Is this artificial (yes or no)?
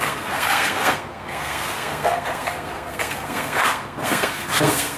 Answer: yes